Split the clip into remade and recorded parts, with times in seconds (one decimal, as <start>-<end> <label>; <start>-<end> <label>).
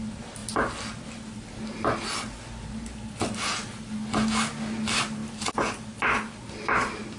0.0-7.2 recorded